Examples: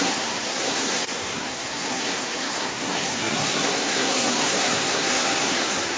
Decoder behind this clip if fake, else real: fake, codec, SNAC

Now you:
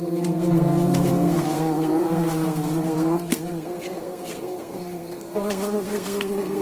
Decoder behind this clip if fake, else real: fake, codec, SNAC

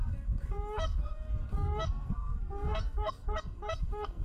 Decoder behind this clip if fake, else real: fake, codec, SNAC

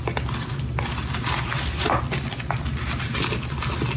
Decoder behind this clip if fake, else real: real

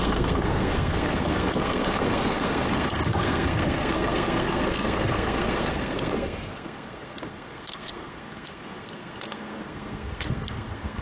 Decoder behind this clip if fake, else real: fake, codec, SNAC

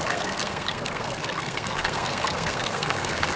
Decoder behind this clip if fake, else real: fake, codec, SNAC